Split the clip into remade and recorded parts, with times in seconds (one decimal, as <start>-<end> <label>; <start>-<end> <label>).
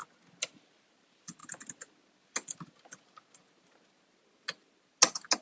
0.0-5.4 recorded